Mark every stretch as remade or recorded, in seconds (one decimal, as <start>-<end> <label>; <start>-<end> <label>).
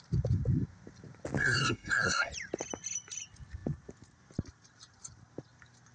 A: 0.0-1.4 recorded; 1.4-2.3 remade; 2.3-5.9 recorded